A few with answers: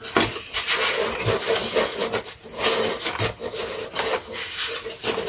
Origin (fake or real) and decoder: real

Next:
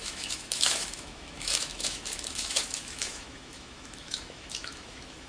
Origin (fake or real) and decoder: fake, autoencoder, DAC-VAE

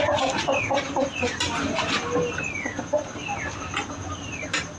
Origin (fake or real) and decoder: real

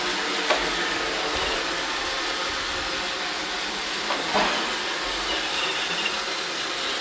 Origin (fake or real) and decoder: real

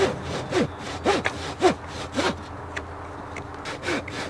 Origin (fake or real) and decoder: real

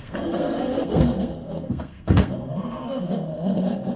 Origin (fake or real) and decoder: fake, codec, SNAC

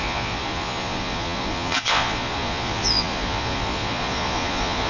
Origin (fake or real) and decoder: fake, vocoder, Vocos